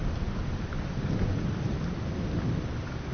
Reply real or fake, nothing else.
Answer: real